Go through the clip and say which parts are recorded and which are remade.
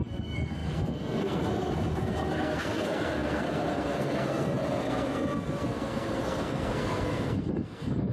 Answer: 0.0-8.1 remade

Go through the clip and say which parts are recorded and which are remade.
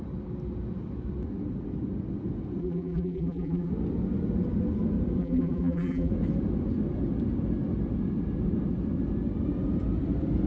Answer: 0.0-2.6 recorded; 2.6-3.7 remade; 3.7-5.2 recorded; 5.2-6.1 remade; 6.1-10.5 recorded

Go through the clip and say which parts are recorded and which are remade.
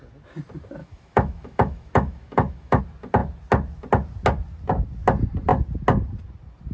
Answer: 0.0-0.8 recorded; 0.8-2.8 remade; 2.8-6.7 recorded